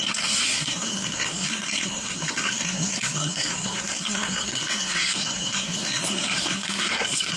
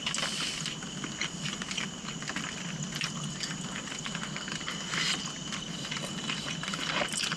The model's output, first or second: first